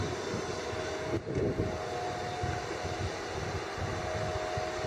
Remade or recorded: recorded